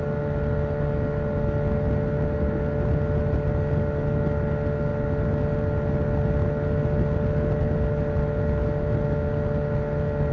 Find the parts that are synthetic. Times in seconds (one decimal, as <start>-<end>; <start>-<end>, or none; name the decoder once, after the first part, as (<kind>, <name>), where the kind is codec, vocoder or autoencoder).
none